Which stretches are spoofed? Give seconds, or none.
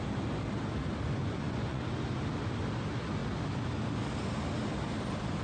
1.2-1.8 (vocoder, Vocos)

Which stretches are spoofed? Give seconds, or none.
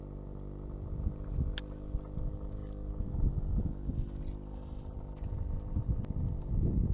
none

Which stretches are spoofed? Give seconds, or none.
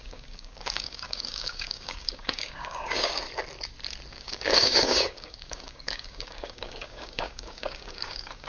0.0-3.1 (codec, DAC); 4.1-8.5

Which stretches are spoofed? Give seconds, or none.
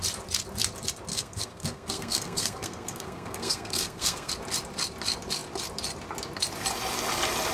1.1-4.3 (codec, SNAC)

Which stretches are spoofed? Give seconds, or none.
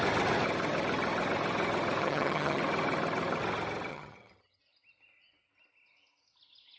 2.0-2.6 (vocoder, HiFi-GAN); 3.9-4.6